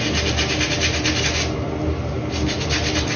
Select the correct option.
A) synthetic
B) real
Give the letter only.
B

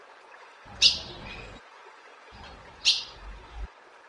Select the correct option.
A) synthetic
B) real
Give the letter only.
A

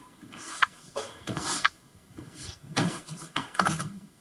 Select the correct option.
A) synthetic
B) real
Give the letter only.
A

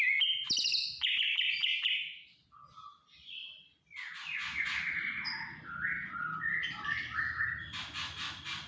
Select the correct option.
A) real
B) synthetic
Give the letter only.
A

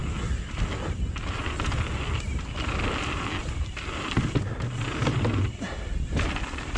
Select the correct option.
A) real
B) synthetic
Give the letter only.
A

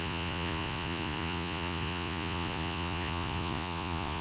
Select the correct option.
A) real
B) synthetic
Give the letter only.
B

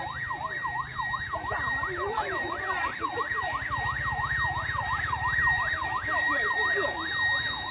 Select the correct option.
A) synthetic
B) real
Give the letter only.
A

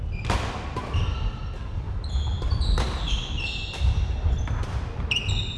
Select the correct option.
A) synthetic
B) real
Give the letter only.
B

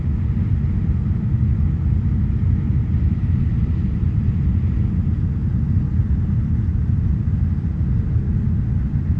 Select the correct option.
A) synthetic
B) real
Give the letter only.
B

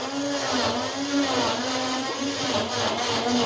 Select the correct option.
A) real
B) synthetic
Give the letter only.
A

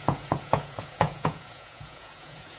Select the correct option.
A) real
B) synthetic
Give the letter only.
B